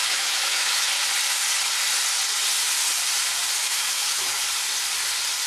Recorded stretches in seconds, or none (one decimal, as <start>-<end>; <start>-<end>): 0.9-3.6; 4.4-5.5